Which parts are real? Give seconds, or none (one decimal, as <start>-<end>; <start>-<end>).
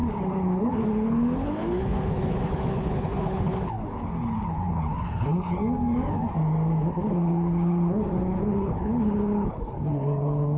5.6-6.8